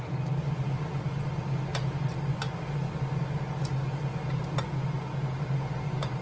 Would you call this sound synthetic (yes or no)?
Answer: no